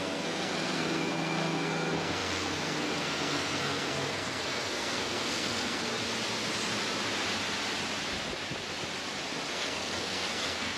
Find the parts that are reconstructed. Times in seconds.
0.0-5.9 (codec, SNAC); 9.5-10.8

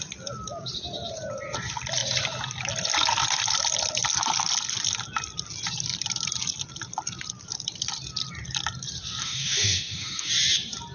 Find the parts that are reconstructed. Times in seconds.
9.2-10.3 (autoencoder, DAC-VAE)

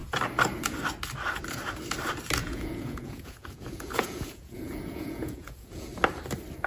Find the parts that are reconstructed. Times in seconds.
2.4-5.9 (vocoder, Vocos)

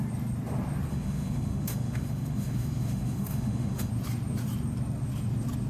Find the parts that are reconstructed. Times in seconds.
0.9-3.9 (autoencoder, DAC-VAE)

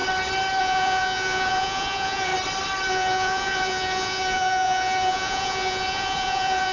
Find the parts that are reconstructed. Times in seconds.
0.6-2.3 (vocoder, Vocos); 2.9-6.7

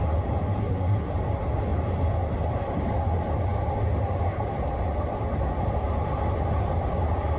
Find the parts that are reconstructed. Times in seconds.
0.6-1.1 (codec, SNAC)